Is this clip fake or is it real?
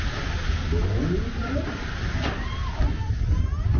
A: real